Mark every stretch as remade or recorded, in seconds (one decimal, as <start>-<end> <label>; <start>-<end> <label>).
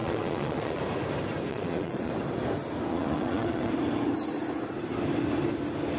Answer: 0.0-0.8 remade; 0.8-1.5 recorded; 1.5-2.1 remade; 2.1-2.9 recorded; 2.9-3.7 remade; 3.7-6.0 recorded